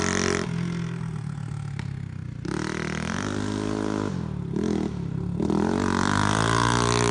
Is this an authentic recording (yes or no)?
yes